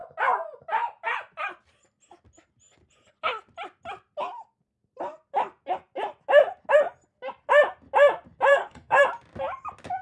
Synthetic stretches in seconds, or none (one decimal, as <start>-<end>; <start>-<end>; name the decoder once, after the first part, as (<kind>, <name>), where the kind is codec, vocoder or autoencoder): 8.5-9.0 (codec, SNAC)